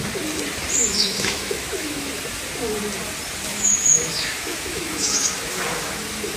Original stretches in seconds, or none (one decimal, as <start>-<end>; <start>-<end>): 0.0-0.8; 2.2-3.5